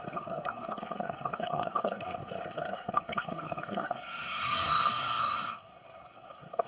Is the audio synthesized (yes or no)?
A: yes